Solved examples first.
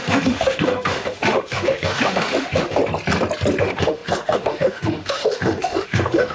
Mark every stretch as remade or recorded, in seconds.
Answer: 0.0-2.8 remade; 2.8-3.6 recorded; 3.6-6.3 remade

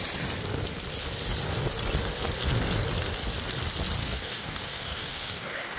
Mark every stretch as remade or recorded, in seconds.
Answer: 0.0-4.0 recorded; 4.0-5.8 remade

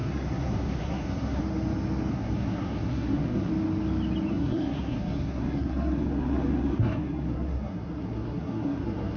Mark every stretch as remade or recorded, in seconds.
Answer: 0.0-1.4 remade; 1.4-2.1 recorded; 2.1-3.5 remade; 3.5-4.3 recorded; 4.3-9.2 remade

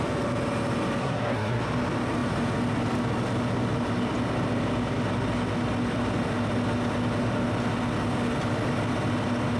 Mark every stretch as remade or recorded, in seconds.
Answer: 0.0-1.0 recorded; 1.0-1.6 remade; 1.6-9.6 recorded

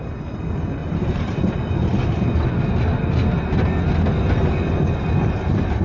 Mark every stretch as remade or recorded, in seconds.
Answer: 0.0-5.8 recorded